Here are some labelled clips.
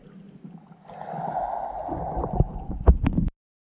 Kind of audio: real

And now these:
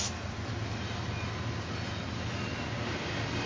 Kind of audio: real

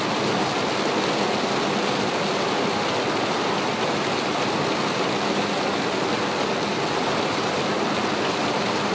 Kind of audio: real